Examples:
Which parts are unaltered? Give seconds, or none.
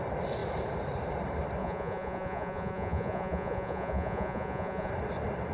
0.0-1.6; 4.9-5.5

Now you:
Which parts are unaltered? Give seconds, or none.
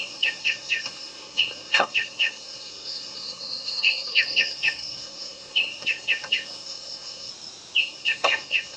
7.3-7.8